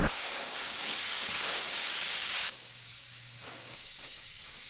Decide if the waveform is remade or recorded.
remade